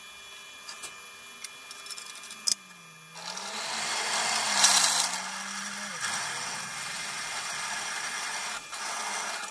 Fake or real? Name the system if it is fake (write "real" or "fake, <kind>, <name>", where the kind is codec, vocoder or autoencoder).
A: real